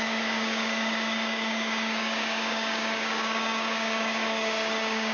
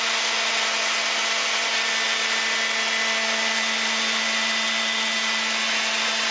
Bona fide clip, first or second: second